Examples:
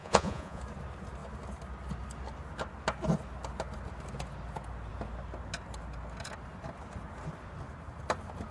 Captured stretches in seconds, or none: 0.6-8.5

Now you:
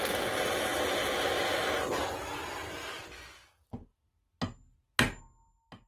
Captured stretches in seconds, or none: 0.0-5.9

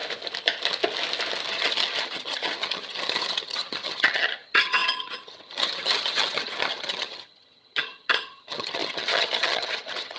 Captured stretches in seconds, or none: 0.0-1.5

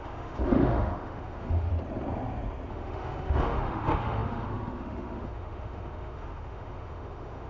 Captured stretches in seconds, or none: 1.7-2.7

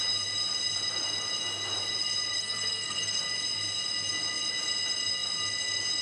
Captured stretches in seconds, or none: 0.0-2.3; 3.2-6.0